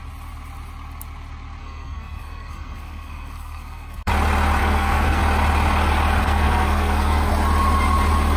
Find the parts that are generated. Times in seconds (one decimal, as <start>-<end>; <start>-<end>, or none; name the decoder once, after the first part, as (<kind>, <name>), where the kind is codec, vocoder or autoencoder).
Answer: 1.6-4.1 (codec, SNAC); 4.6-5.2; 6.2-7.3

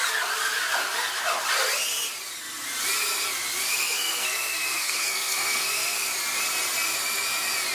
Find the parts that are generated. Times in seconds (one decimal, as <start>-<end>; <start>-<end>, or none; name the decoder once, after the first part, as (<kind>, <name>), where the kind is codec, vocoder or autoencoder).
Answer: 3.7-6.1 (codec, SNAC)

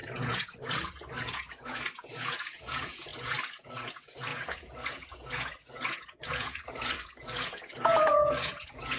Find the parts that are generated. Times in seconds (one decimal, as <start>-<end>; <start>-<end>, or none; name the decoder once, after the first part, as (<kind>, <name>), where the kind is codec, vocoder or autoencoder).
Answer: 0.0-9.0 (vocoder, Vocos)

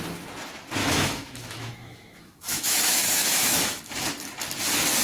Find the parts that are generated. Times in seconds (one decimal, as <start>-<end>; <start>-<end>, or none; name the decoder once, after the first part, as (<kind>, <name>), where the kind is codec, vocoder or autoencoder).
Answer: 0.8-3.8 (autoencoder, DAC-VAE)